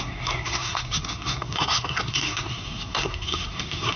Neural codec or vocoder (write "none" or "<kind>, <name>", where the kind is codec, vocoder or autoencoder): codec, SNAC